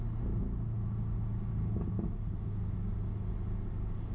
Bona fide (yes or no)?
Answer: yes